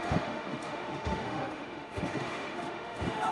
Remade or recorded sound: remade